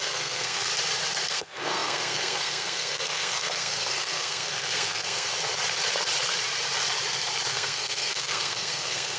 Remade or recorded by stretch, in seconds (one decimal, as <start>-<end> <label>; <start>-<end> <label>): 0.0-0.7 remade; 0.7-1.3 recorded; 1.3-5.3 remade; 5.3-7.5 recorded; 7.5-9.2 remade